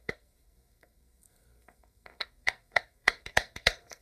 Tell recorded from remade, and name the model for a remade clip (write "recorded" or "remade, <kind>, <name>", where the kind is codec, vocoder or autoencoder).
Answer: remade, codec, SNAC